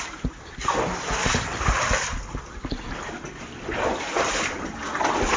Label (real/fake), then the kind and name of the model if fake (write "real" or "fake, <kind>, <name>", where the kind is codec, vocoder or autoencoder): real